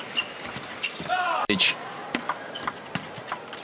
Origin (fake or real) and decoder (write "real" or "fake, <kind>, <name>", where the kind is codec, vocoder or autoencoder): real